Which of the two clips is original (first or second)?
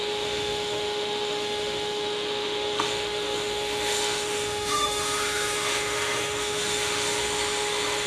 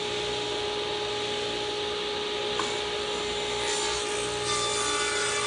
second